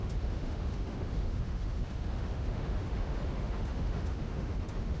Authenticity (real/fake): fake